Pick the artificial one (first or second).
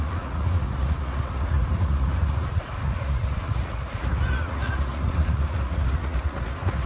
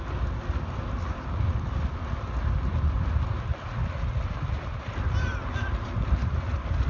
first